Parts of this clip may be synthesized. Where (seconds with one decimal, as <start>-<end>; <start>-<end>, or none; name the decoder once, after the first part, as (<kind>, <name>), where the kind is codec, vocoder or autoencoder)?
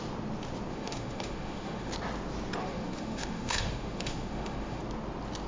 0.7-1.9 (autoencoder, DAC-VAE); 2.6-4.8